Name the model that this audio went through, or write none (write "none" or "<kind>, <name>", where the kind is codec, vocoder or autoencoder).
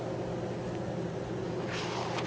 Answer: none